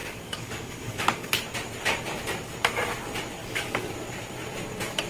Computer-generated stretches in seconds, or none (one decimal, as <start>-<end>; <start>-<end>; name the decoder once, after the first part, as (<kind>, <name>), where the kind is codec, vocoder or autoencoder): 0.0-1.3 (codec, DAC); 3.4-3.9